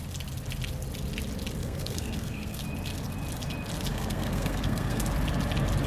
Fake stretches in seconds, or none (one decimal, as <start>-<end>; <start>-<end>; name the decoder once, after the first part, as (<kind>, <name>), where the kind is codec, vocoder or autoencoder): 1.6-2.6 (codec, SNAC); 3.9-5.0